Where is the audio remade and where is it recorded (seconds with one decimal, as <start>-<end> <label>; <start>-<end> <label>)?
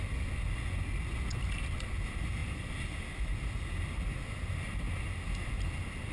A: 0.0-6.1 recorded